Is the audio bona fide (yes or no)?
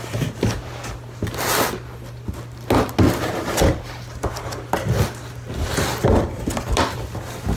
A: yes